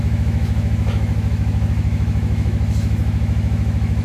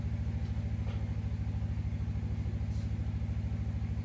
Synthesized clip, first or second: first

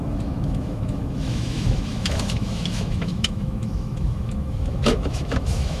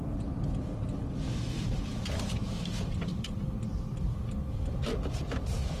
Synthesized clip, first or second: first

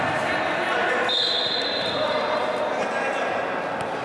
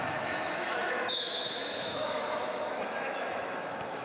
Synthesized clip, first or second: second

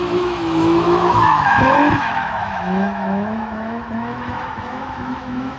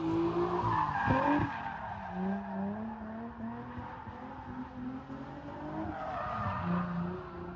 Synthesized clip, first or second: first